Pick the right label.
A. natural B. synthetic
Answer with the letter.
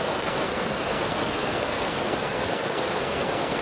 B